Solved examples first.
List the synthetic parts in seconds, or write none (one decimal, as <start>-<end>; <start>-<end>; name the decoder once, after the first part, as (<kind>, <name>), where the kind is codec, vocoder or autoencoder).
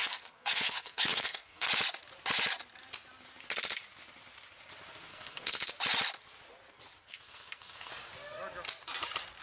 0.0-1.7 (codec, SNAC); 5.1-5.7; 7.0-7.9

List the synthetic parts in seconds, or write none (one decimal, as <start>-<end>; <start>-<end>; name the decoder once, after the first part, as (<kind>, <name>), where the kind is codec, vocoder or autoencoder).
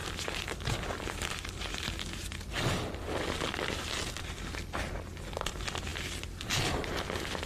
none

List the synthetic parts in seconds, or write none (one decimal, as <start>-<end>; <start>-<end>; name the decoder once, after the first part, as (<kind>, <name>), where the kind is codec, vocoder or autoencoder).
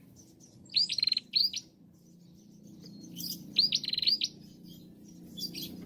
none